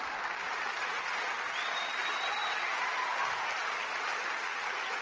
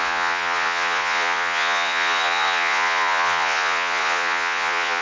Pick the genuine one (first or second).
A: first